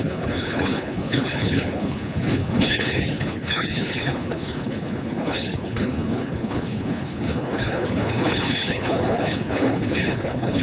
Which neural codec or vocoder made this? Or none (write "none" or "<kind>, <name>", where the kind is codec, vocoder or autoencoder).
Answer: codec, HILCodec